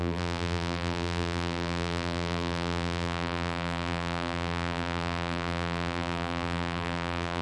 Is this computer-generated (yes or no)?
yes